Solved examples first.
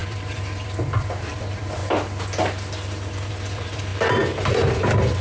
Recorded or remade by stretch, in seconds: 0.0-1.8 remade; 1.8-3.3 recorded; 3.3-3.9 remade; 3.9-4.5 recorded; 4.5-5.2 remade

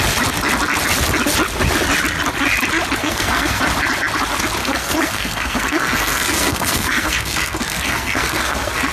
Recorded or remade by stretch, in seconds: 0.0-3.0 recorded; 3.0-3.6 remade; 3.6-4.6 recorded; 4.6-8.9 remade

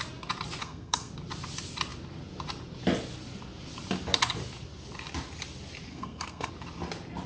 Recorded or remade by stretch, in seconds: 0.0-0.6 recorded; 0.6-1.1 remade; 1.1-5.9 recorded; 5.9-6.5 remade; 6.5-7.3 recorded

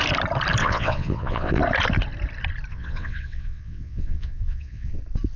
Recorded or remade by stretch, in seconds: 0.0-0.6 recorded; 0.6-1.6 remade; 1.6-2.7 recorded; 2.7-5.0 remade; 5.0-5.4 recorded